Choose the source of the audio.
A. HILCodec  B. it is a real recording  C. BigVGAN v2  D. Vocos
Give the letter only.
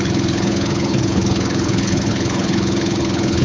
A